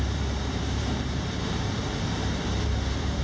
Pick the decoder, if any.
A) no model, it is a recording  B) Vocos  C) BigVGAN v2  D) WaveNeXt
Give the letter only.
C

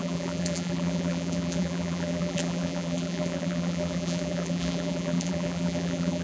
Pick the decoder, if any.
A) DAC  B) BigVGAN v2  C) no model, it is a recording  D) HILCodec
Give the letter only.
B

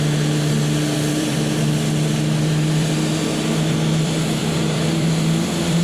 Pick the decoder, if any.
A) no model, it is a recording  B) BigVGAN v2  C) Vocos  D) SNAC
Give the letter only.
B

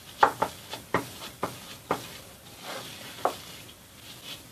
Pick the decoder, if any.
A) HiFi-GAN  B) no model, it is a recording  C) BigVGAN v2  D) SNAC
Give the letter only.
B